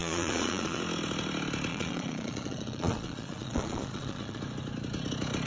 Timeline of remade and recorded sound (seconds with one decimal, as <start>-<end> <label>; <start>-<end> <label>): 0.0-0.8 remade; 0.8-1.7 recorded; 1.7-4.4 remade; 4.4-5.5 recorded